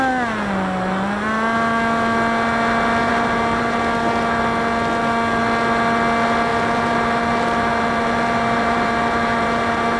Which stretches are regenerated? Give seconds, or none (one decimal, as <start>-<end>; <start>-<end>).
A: 3.0-3.8; 6.5-10.0